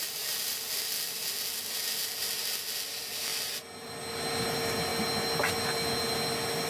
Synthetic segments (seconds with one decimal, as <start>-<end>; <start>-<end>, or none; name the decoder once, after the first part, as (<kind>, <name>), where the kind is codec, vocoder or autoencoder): none